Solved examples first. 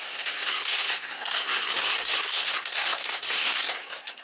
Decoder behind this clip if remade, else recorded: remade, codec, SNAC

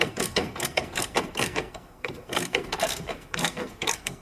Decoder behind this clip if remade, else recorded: remade, codec, SNAC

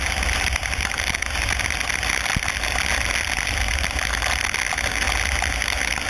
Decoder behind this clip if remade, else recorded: recorded